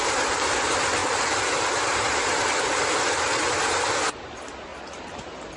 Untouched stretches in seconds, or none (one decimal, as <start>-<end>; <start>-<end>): 1.0-3.5; 4.7-5.6